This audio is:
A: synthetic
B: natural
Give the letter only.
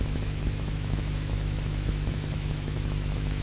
A